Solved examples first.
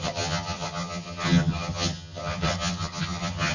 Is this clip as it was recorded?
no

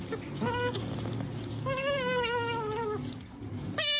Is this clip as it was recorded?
yes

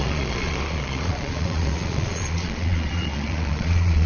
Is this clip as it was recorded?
no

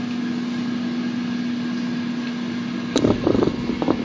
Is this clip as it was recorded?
yes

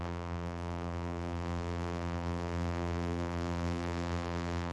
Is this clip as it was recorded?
no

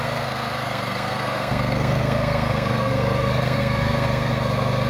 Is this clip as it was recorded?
no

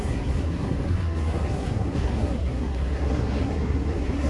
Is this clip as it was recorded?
no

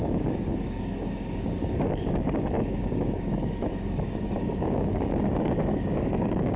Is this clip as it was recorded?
no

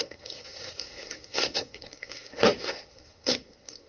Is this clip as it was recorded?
no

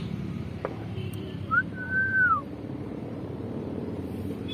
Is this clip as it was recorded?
no